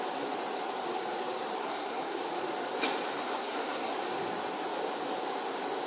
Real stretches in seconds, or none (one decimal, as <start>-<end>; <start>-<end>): 0.0-1.6; 2.2-3.1; 3.9-5.9